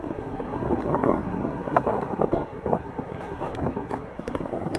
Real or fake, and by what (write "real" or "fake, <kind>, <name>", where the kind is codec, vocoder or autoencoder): fake, codec, SNAC